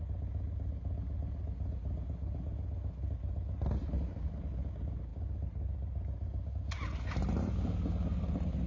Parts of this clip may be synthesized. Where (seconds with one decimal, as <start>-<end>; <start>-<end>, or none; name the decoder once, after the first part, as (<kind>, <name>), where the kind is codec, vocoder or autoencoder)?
none